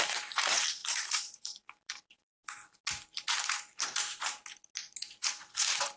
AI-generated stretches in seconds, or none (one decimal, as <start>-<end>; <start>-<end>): 0.0-2.3; 3.8-4.4; 5.0-6.0